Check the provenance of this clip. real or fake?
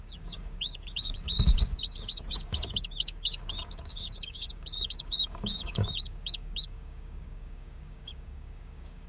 fake